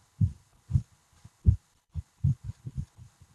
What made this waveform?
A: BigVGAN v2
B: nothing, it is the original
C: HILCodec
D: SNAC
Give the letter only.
C